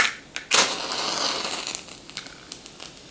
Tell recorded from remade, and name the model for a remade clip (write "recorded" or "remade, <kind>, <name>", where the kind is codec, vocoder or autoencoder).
recorded